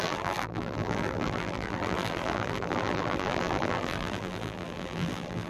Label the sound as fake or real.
fake